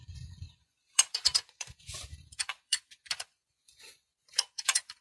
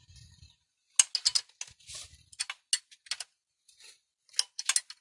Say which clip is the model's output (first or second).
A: first